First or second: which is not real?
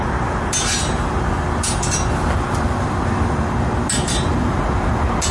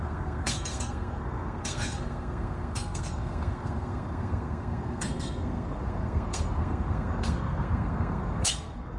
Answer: second